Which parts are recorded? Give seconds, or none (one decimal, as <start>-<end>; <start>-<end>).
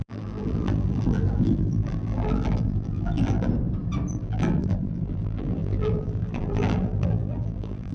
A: 3.5-4.1